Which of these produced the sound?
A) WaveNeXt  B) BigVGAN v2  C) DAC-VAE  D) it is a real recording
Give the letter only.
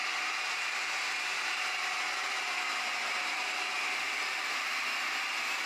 D